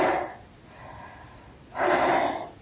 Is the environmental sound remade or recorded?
recorded